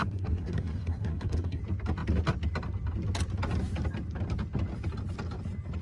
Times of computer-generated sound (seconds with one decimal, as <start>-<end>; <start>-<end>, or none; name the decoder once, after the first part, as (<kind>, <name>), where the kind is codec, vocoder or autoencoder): 0.0-1.6 (codec, SNAC)